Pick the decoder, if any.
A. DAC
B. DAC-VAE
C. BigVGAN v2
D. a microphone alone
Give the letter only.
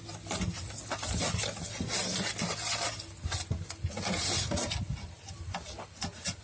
D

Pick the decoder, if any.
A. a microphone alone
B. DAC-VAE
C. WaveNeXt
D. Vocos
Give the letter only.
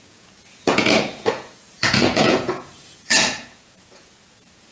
D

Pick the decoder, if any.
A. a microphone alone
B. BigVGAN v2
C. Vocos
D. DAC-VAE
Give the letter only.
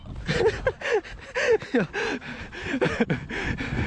A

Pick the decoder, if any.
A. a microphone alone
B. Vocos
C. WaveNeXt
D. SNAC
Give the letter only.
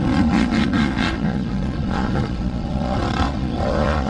B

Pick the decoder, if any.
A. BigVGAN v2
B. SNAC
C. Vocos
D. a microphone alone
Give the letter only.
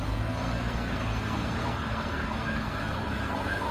B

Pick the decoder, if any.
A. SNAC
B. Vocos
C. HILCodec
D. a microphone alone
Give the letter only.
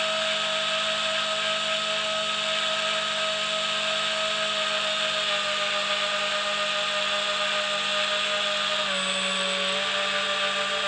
D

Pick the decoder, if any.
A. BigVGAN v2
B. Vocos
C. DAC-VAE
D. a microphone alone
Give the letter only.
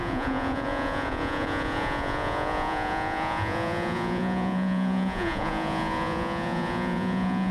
B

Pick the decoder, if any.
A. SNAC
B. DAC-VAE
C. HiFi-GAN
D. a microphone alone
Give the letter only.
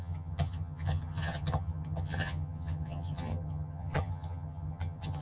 C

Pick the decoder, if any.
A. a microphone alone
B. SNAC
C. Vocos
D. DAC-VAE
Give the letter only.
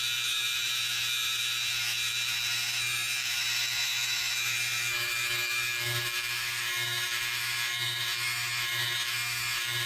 D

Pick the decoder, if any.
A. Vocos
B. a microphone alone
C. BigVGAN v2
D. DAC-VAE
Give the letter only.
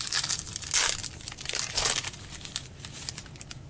B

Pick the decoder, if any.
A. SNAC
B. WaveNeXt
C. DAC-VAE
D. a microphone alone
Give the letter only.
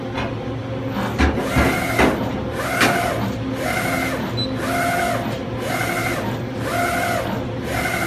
D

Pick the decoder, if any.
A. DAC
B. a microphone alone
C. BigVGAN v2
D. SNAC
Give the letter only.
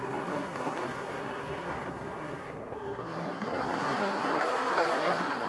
D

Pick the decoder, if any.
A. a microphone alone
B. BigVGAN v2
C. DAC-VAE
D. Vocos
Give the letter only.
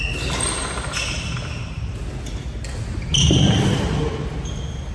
A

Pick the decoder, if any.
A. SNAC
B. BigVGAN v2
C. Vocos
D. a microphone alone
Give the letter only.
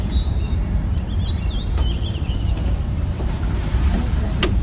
B